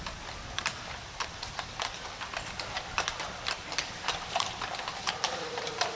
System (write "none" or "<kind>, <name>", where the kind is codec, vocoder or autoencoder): vocoder, BigVGAN v2